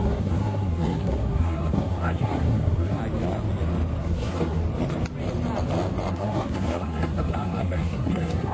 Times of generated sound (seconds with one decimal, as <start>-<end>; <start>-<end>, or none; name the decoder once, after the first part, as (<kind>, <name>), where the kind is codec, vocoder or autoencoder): 0.0-3.0 (codec, SNAC); 4.0-4.6; 6.1-8.5